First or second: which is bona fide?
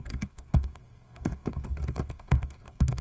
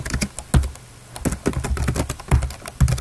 second